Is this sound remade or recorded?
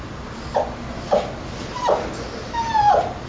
recorded